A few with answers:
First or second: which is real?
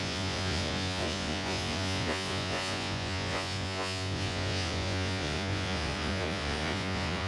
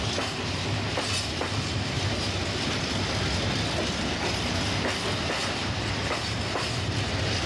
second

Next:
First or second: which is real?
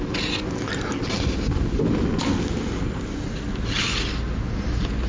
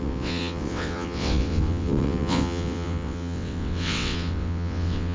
first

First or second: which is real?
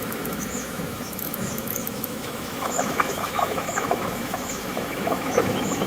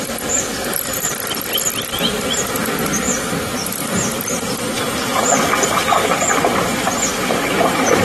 second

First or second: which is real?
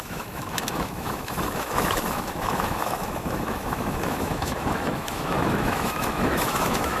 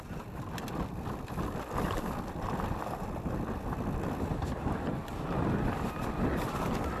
second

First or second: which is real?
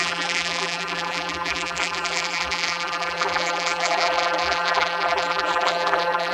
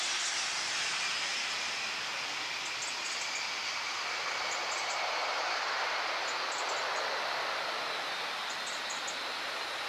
second